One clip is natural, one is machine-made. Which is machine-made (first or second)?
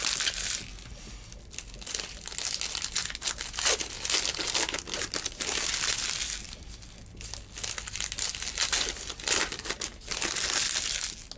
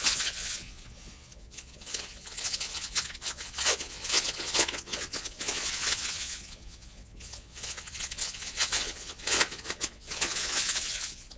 second